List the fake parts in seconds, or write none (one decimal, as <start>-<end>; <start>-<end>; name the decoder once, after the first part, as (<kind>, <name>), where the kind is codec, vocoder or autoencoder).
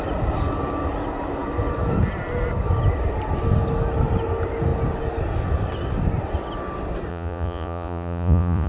7.1-8.7 (vocoder, Vocos)